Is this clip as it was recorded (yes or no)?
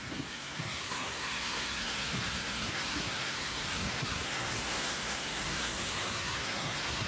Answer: no